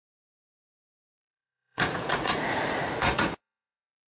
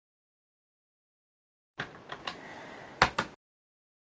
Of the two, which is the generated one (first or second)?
first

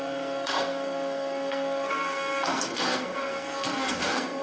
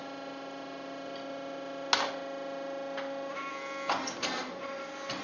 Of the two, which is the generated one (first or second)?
first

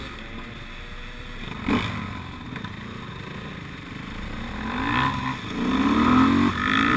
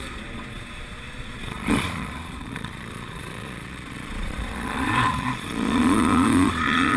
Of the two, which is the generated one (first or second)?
second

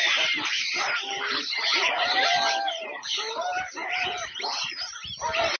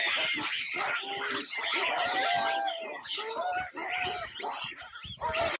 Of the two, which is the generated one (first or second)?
first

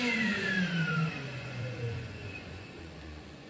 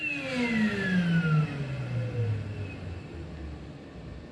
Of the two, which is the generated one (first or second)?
first